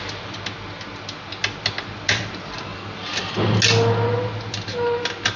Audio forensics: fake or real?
real